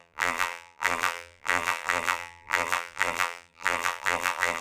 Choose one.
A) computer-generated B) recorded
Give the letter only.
A